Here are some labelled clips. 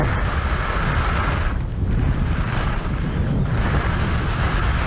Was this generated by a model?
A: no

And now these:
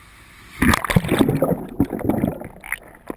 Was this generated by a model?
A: no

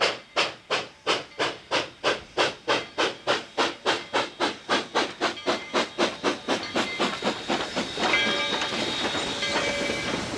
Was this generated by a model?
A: no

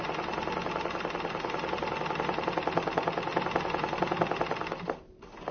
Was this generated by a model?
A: no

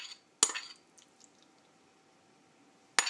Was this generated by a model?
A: no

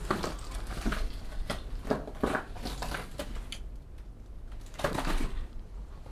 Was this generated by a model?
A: no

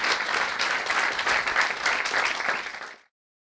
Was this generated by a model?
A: no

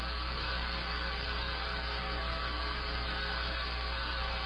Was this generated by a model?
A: yes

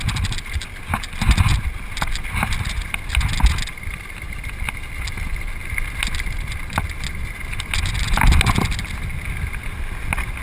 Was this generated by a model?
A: no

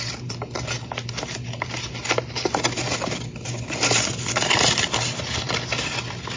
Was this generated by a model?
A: no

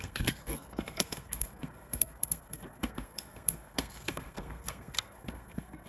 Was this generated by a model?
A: yes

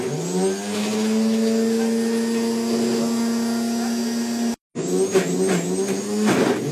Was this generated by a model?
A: no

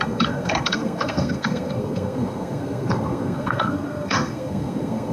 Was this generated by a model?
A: yes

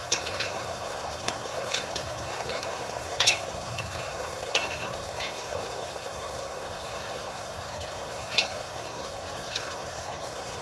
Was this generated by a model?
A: yes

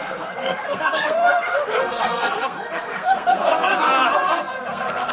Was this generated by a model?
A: yes